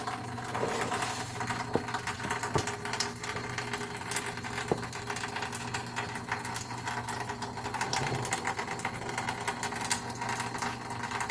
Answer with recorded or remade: recorded